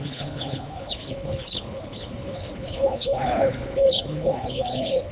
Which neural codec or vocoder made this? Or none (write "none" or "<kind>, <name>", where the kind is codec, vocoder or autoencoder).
codec, HILCodec